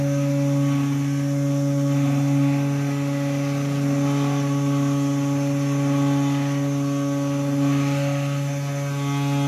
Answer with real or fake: real